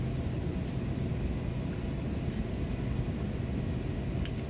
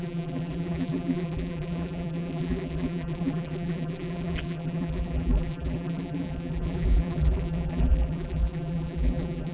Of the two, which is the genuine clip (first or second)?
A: first